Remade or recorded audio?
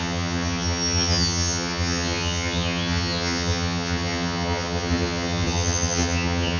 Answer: remade